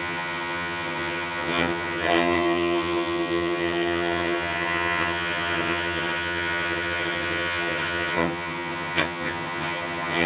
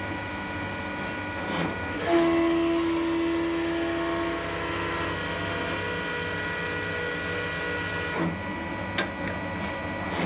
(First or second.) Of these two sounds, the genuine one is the second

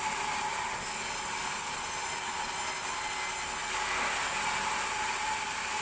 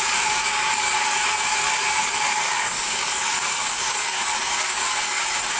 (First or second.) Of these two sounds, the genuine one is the first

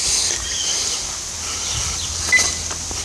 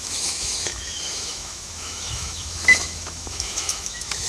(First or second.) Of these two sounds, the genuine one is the first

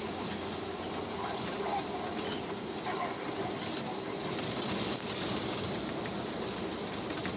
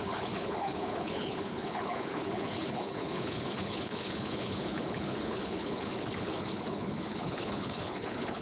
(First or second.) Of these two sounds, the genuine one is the first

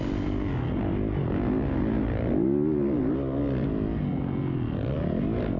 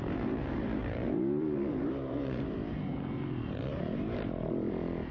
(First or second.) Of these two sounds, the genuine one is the first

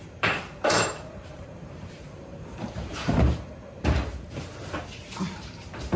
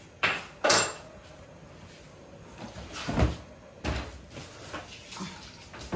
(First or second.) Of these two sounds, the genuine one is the second